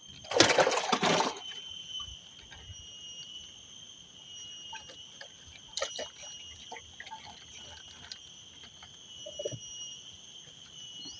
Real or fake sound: real